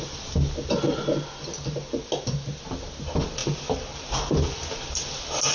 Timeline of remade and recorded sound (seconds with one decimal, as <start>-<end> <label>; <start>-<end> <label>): 0.0-5.5 recorded